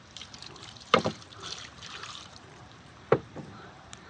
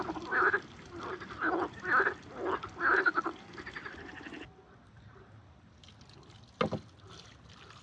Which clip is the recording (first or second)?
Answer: second